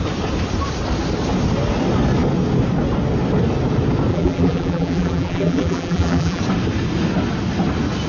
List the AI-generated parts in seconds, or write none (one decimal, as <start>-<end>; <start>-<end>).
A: 4.1-6.4

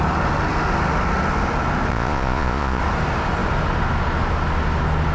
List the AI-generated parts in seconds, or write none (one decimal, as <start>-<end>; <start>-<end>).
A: 1.9-2.8

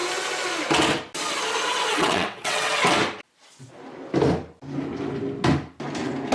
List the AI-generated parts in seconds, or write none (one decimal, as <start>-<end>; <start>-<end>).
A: 1.9-2.7